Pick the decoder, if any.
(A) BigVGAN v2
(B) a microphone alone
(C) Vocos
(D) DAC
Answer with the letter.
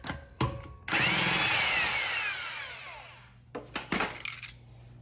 B